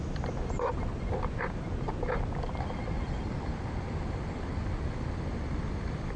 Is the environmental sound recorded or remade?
recorded